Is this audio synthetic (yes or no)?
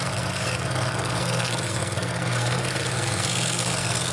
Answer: yes